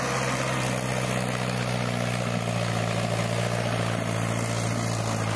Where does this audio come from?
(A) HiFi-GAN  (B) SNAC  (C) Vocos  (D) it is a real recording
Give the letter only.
D